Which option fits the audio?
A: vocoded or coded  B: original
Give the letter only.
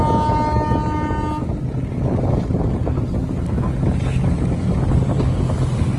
B